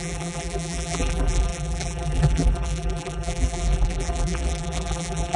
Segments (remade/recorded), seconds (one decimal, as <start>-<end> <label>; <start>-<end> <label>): 0.0-5.4 remade